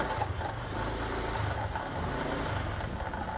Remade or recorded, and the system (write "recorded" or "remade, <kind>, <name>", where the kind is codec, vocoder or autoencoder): recorded